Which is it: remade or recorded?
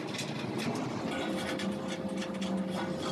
recorded